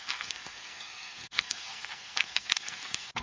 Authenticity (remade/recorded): remade